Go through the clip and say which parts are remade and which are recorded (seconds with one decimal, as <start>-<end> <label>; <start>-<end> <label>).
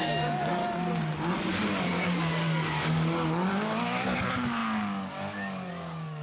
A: 0.0-0.6 remade; 0.6-1.5 recorded; 1.5-6.2 remade